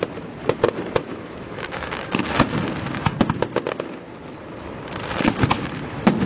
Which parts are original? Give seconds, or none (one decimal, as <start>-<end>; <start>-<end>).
0.0-1.0; 2.0-6.3